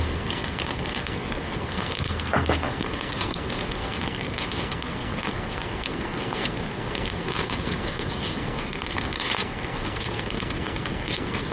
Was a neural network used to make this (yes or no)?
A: yes